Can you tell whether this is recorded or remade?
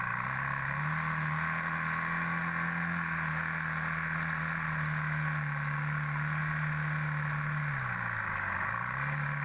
recorded